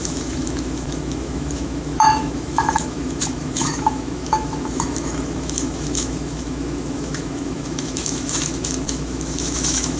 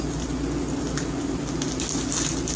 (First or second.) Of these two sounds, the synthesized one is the first